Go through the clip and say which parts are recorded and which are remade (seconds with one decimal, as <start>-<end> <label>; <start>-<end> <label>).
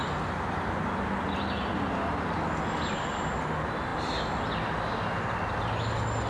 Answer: 0.0-6.3 recorded